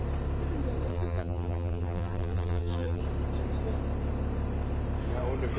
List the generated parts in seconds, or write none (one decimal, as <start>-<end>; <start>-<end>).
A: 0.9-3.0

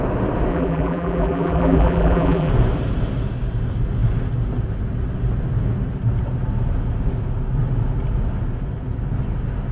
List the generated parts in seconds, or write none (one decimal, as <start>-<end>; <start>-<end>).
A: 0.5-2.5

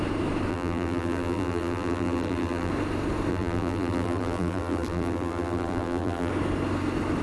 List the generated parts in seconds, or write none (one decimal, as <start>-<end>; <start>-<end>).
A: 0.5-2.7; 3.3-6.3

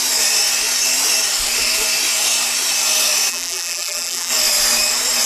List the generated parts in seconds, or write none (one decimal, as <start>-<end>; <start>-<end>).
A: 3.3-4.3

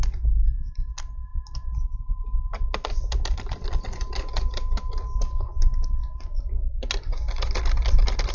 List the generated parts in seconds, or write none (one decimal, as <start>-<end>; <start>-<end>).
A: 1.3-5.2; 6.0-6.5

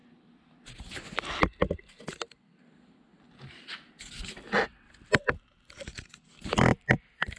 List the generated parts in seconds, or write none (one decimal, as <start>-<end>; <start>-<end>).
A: none

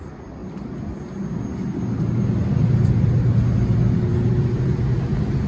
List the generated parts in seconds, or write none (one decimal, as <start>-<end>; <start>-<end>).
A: none